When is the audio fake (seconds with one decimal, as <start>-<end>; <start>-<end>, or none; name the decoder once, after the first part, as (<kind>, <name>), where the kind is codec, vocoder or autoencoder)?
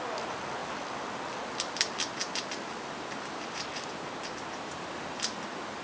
none